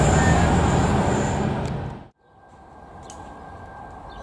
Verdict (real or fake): real